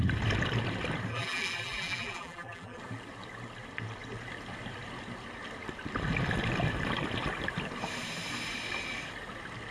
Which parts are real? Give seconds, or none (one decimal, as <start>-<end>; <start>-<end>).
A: 0.0-1.1; 2.8-9.7